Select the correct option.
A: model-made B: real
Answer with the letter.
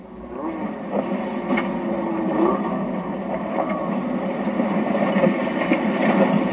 B